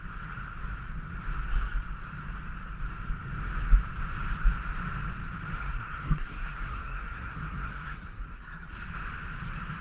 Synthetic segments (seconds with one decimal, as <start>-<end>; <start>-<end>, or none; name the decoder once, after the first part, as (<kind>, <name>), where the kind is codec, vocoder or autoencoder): 5.6-8.7 (codec, SNAC)